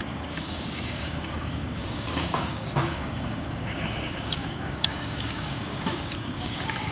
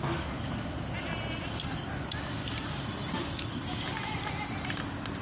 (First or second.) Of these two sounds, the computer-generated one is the first